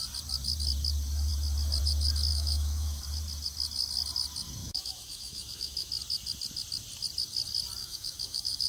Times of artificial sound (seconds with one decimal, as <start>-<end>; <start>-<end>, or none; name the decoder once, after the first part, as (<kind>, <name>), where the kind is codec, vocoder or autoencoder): 2.3-3.0 (autoencoder, DAC-VAE); 4.6-5.9; 7.8-8.7